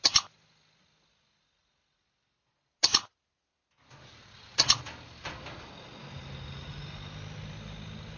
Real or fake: real